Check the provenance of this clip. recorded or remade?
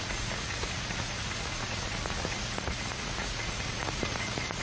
remade